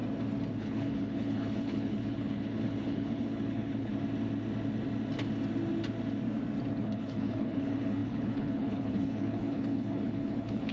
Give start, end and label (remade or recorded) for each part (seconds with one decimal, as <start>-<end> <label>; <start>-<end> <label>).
0.0-0.6 recorded; 0.6-3.9 remade; 3.9-6.8 recorded; 6.8-10.7 remade